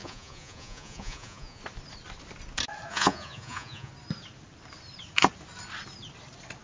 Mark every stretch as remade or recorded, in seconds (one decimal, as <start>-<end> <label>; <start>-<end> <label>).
0.0-1.6 remade; 1.6-2.9 recorded; 2.9-3.9 remade; 3.9-6.6 recorded